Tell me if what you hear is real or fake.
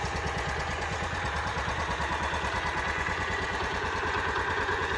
fake